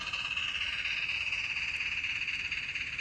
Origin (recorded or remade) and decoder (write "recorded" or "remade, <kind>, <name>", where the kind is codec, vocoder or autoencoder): recorded